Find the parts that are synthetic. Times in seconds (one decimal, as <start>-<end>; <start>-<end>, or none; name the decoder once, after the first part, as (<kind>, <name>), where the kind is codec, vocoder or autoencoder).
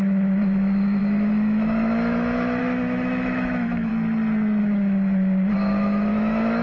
0.0-3.9 (autoencoder, DAC-VAE); 4.6-6.6